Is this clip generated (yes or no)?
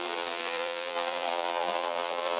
yes